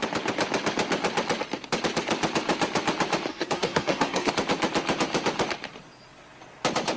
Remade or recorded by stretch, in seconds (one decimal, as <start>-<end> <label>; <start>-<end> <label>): 0.0-3.3 recorded; 3.3-4.3 remade; 4.3-7.0 recorded